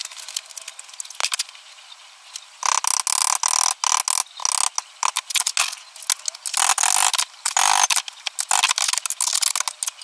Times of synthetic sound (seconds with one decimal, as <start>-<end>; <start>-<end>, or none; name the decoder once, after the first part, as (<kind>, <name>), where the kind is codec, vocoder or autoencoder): none